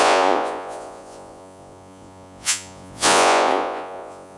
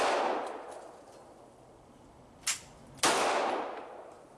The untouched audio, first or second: second